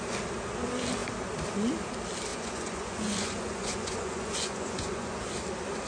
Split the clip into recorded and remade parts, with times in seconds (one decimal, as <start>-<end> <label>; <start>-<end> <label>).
0.0-2.3 recorded; 2.3-5.2 remade; 5.2-5.9 recorded

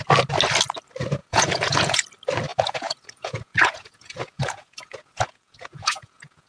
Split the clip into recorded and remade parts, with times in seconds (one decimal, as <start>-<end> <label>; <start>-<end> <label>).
0.0-1.2 recorded; 1.2-2.0 remade; 2.0-2.5 recorded; 2.5-6.5 remade